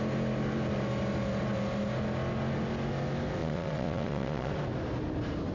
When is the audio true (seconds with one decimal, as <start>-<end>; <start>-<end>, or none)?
0.0-3.4; 4.5-5.5